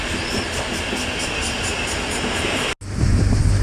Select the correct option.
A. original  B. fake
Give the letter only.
A